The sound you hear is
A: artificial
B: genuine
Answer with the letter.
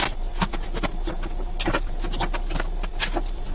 B